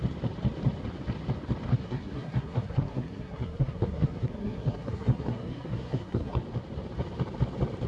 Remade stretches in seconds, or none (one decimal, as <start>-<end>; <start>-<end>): 1.7-6.4